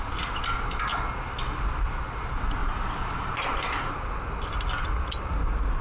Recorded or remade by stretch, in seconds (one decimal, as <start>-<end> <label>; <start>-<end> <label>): 0.0-2.6 recorded; 2.6-4.2 remade; 4.2-5.8 recorded